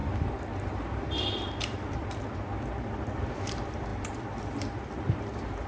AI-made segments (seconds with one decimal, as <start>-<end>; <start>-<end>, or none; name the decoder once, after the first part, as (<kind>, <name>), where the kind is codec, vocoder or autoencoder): 0.0-1.5 (vocoder, BigVGAN v2); 3.9-5.7